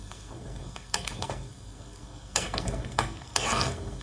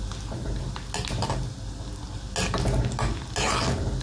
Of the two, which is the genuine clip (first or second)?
second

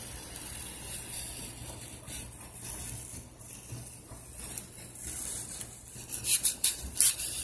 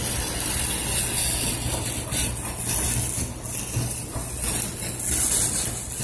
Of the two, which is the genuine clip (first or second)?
second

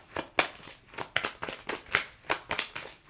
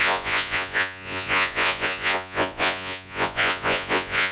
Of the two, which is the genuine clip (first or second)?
first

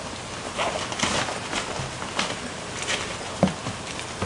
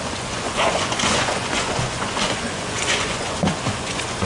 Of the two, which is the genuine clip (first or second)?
first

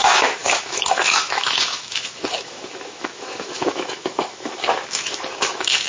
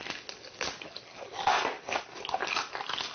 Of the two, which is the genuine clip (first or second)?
second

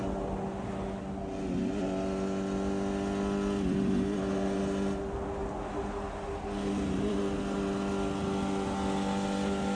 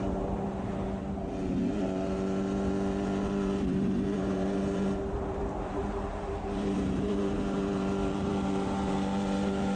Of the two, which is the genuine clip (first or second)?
first